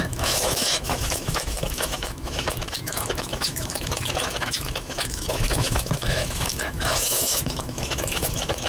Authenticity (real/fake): fake